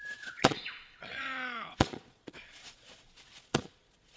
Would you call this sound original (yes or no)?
no